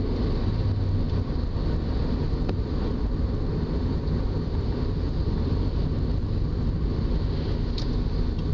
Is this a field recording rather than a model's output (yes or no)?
yes